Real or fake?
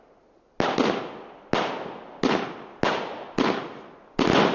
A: real